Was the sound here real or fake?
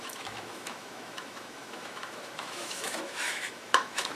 fake